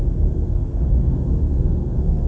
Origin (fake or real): fake